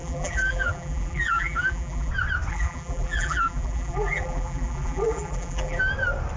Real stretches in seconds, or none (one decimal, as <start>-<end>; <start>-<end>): 2.1-2.5; 5.8-6.4